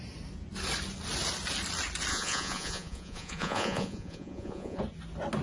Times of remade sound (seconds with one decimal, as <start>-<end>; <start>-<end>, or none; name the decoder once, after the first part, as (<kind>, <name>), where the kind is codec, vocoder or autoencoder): 2.1-4.8 (vocoder, Vocos)